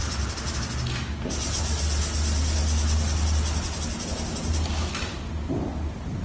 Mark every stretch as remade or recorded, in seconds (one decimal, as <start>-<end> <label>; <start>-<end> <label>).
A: 0.0-0.5 remade; 0.5-6.2 recorded